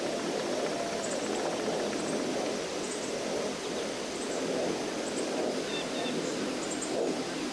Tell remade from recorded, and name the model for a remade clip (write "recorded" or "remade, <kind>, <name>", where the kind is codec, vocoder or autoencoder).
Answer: recorded